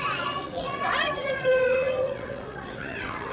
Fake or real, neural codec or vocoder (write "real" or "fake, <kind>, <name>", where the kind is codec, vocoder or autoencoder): fake, vocoder, WaveNeXt